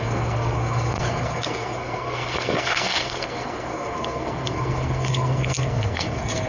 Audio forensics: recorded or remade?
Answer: remade